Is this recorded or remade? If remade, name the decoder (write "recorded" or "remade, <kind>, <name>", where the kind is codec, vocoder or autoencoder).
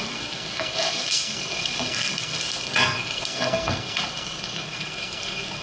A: remade, codec, SNAC